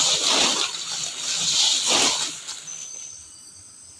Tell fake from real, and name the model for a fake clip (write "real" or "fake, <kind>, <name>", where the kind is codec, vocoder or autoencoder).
real